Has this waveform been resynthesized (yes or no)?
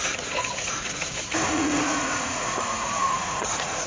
yes